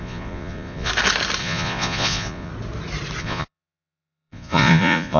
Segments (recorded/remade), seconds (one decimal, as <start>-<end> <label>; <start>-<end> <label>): 0.0-0.9 remade; 0.9-1.4 recorded; 1.4-2.5 remade; 2.5-3.2 recorded; 3.2-5.2 remade